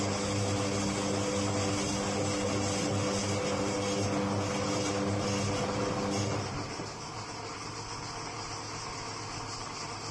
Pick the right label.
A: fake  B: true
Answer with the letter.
B